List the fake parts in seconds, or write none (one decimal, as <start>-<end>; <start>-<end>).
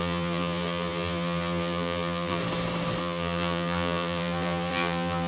0.0-2.4; 3.0-5.3